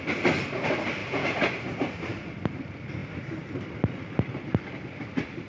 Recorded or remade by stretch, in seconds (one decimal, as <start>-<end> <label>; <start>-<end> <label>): 0.0-1.0 recorded; 1.0-2.3 remade; 2.3-5.5 recorded